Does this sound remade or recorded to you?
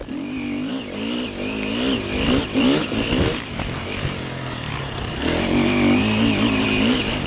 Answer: recorded